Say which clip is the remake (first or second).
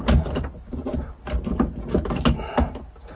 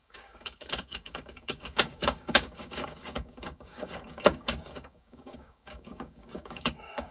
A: second